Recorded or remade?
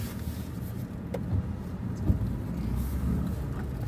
recorded